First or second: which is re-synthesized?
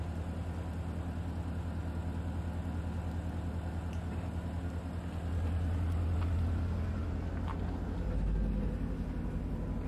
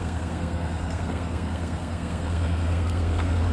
second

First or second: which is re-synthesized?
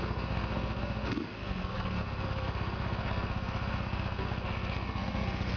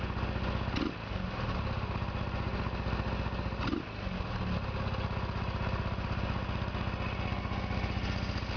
first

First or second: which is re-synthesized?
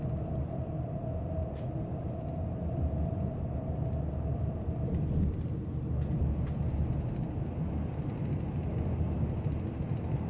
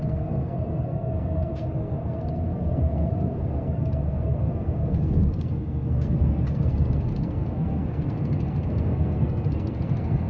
second